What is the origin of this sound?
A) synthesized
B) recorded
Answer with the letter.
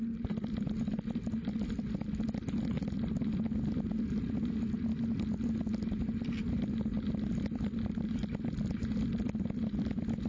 B